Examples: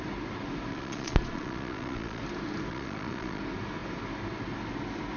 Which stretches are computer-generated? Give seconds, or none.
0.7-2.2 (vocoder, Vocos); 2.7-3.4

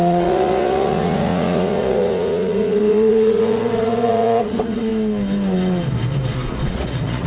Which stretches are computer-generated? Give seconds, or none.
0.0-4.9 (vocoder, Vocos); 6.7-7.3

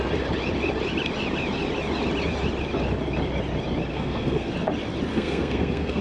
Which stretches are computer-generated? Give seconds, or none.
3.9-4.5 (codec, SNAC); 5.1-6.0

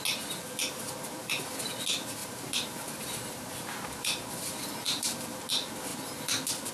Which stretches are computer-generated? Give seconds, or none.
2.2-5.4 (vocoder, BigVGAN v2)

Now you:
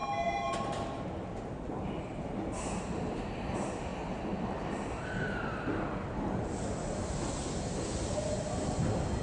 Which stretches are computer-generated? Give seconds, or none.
none

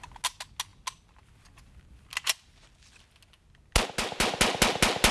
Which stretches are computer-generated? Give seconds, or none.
none

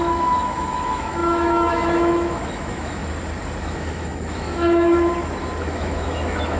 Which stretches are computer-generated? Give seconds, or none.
0.0-3.0 (autoencoder, DAC-VAE); 3.6-5.1; 5.6-6.6